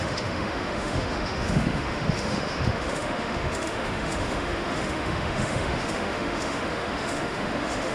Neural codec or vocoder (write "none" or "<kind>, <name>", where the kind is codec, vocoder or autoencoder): autoencoder, DAC-VAE